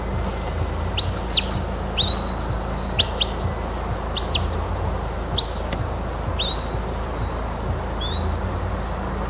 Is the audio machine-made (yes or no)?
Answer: no